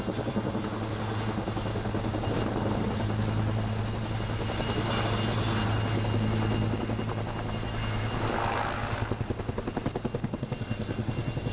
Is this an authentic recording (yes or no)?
yes